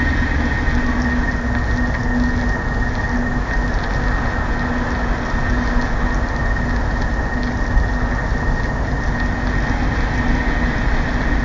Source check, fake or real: real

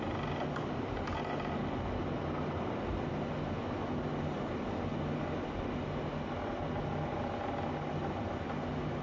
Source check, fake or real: real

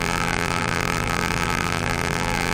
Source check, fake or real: fake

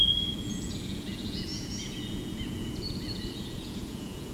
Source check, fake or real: fake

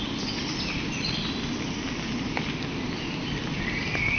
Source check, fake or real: real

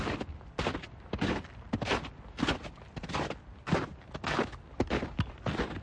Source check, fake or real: real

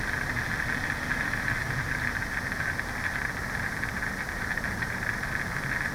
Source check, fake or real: real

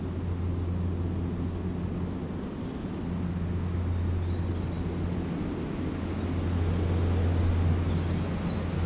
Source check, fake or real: real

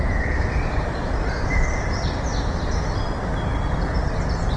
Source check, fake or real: real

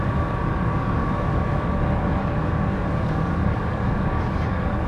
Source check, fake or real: fake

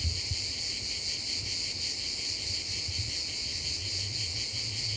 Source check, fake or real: real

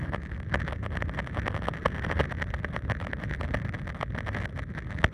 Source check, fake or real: real